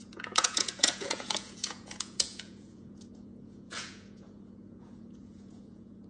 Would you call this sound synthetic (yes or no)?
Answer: yes